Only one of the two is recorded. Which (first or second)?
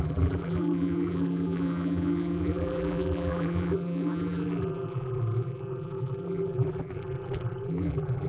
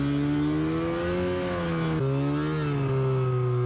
second